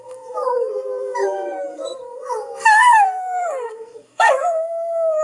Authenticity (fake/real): fake